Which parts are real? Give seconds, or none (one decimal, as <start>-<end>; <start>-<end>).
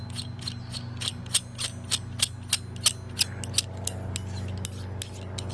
0.0-5.5